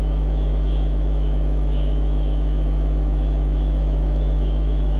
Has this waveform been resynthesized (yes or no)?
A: yes